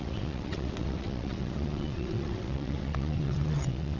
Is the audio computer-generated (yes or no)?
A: yes